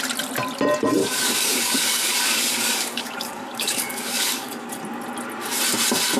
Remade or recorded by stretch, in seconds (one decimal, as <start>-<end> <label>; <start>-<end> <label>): 0.0-1.0 recorded; 1.0-4.7 remade; 4.7-6.2 recorded